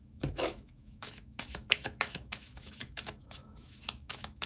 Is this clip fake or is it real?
fake